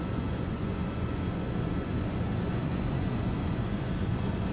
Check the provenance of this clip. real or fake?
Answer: fake